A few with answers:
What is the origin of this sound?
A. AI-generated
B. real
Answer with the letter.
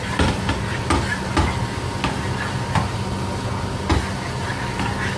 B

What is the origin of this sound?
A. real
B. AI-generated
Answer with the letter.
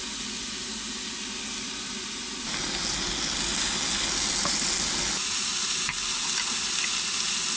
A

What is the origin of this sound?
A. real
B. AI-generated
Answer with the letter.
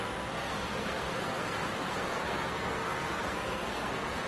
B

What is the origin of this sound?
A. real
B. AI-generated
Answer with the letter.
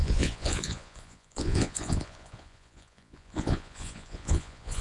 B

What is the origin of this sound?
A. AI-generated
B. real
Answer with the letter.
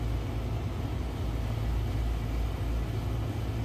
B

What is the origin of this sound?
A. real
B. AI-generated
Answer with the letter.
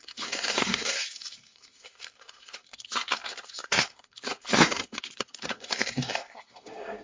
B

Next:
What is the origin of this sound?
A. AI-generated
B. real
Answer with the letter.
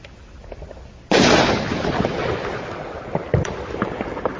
B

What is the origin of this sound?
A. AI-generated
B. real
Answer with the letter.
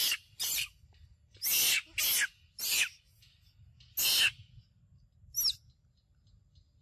B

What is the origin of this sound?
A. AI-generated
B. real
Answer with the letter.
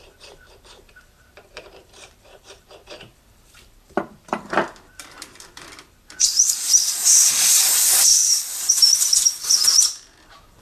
A